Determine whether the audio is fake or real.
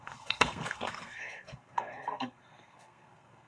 fake